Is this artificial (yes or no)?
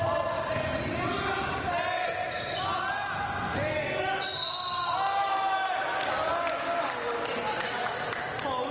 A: no